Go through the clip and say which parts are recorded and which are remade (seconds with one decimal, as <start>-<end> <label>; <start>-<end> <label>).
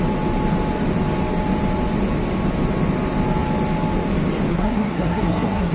0.0-4.5 recorded; 4.5-5.7 remade